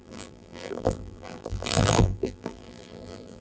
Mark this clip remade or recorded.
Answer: remade